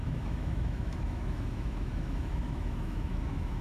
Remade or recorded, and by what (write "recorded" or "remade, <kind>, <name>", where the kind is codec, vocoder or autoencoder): remade, autoencoder, DAC-VAE